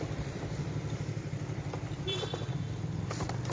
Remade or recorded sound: remade